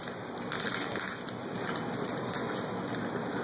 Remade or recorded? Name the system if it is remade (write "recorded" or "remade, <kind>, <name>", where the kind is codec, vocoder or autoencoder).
recorded